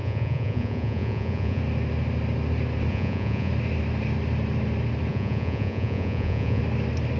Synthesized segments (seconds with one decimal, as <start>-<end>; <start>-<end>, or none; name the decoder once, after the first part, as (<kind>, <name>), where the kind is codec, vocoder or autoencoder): 0.0-1.6 (vocoder, Vocos); 2.9-3.5; 5.1-6.6